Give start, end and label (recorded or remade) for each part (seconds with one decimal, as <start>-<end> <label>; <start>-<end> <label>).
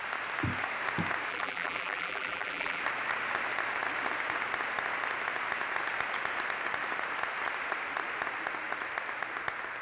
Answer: 0.0-1.3 recorded; 1.3-2.8 remade; 2.8-9.8 recorded